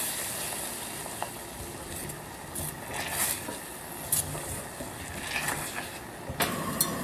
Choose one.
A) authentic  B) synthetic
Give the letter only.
A